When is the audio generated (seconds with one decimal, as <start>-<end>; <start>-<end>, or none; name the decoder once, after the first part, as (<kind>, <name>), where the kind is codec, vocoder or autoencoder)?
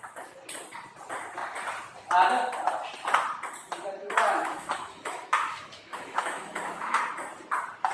4.0-7.0 (autoencoder, DAC-VAE)